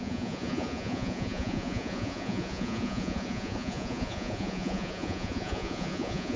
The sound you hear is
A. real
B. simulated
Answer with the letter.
B